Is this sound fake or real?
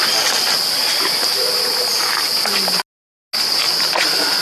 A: real